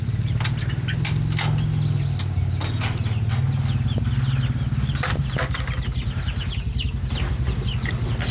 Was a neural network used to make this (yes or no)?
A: no